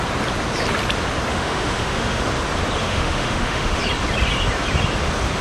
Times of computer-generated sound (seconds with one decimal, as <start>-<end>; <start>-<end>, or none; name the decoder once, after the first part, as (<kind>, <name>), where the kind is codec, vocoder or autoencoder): 1.3-2.2 (autoencoder, DAC-VAE); 2.8-3.8